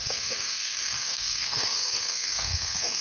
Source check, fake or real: fake